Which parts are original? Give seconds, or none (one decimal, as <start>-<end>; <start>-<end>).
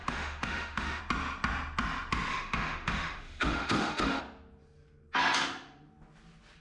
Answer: 1.0-2.3; 4.2-6.6